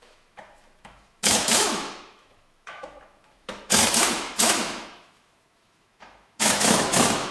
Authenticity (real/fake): fake